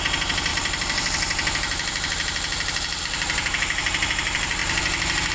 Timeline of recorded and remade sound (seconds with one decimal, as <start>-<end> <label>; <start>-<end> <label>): 0.0-0.5 recorded; 0.5-3.0 remade; 3.0-5.3 recorded